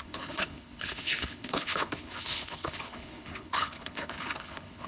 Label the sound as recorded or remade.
remade